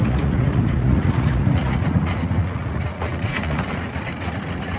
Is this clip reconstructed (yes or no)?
yes